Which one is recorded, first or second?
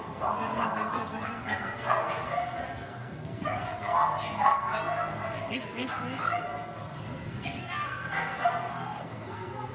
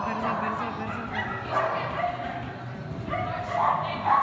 second